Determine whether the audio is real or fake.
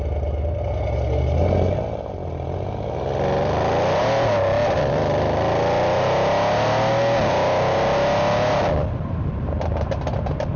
real